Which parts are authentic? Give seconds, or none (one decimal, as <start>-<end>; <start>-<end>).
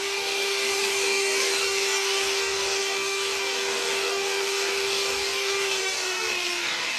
none